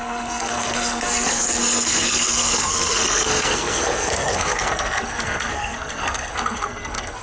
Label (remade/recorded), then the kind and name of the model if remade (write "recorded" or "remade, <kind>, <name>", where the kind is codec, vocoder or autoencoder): remade, codec, SNAC